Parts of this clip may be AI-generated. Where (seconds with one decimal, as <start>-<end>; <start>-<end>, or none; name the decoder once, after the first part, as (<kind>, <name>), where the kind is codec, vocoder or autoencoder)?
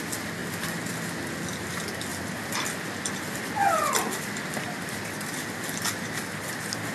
none